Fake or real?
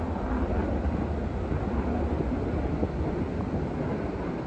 real